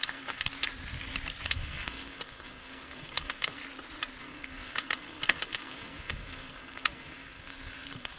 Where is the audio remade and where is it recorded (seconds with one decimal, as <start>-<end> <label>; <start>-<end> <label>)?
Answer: 0.0-0.5 remade; 0.5-1.5 recorded; 1.5-3.6 remade; 3.6-4.2 recorded; 4.2-8.2 remade